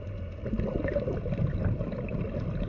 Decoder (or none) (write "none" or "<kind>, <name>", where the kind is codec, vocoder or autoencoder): none